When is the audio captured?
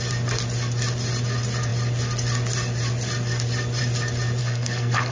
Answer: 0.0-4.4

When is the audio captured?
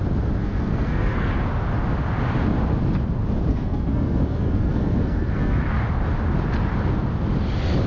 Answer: 0.0-0.4; 1.3-3.5; 5.6-7.9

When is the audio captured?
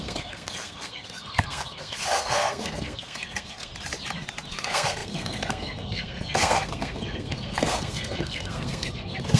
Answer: 3.7-4.5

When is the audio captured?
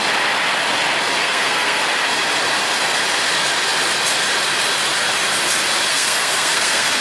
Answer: 0.0-1.2; 1.8-5.9